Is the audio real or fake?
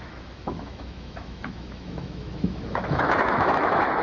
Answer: fake